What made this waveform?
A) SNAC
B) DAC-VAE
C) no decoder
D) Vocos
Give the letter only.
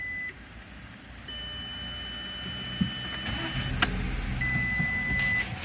C